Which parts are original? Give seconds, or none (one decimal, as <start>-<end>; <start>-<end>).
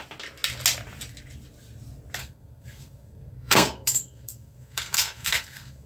0.0-2.2